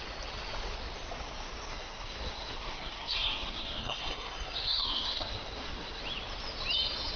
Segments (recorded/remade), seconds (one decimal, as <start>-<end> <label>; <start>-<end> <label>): 0.0-1.7 recorded; 1.7-6.0 remade; 6.0-7.2 recorded